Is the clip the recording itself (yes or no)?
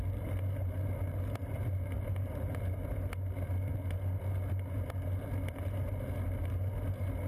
yes